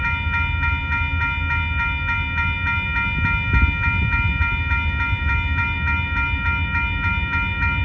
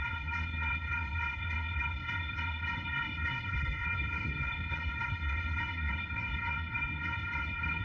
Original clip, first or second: first